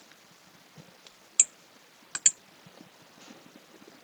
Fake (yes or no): no